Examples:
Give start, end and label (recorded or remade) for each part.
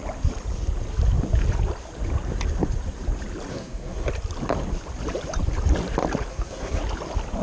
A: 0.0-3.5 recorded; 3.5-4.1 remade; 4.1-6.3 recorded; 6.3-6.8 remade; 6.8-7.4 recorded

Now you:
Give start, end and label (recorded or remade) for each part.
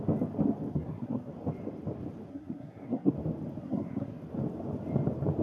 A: 0.0-0.7 recorded; 0.7-1.3 remade; 1.3-2.3 recorded; 2.3-3.1 remade; 3.1-3.6 recorded; 3.6-4.2 remade; 4.2-5.4 recorded